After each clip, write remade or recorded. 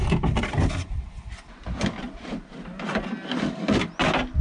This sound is recorded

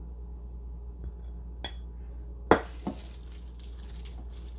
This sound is recorded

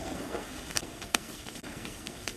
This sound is remade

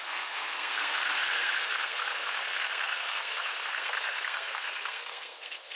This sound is remade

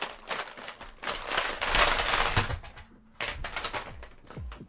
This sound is recorded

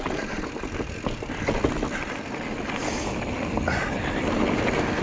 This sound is recorded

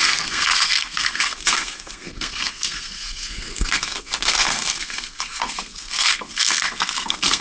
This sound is remade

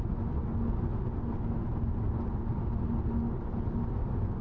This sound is recorded